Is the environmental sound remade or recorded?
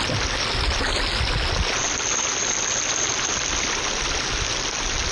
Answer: recorded